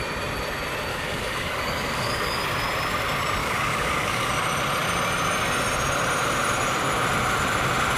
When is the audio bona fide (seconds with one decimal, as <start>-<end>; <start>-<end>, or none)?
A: 0.0-0.9; 2.4-3.4; 4.3-8.0